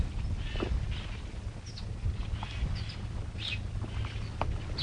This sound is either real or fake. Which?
real